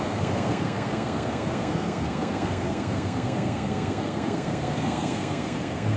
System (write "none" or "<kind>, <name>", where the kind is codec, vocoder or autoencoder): codec, SNAC